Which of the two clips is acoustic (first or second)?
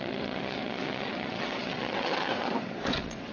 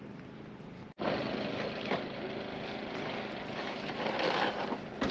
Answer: second